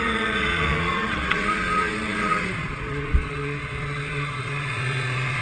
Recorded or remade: remade